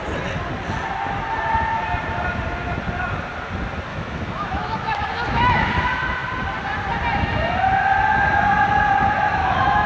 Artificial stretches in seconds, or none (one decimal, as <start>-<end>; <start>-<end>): 3.9-5.7; 9.4-9.9